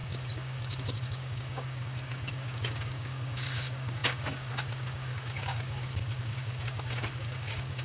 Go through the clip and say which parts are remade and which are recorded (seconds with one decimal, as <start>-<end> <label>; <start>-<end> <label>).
0.0-7.8 remade